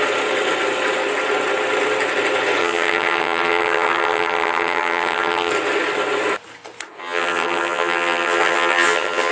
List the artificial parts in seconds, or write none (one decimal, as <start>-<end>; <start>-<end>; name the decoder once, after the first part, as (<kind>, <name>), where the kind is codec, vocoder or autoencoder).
2.6-5.5 (vocoder, HiFi-GAN); 7.0-9.3